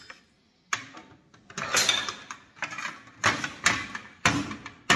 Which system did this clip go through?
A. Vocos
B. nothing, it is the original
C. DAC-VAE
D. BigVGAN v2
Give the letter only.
B